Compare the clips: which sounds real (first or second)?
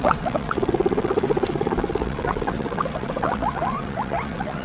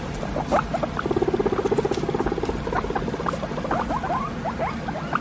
second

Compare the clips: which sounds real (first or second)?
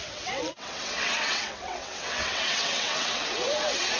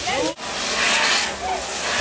second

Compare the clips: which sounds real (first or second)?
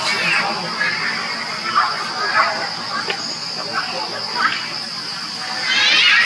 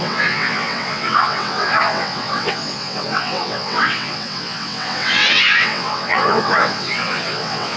first